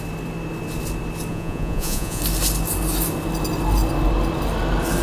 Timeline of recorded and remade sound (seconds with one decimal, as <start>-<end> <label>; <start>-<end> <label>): 0.0-1.3 recorded; 1.3-2.2 remade; 2.2-5.0 recorded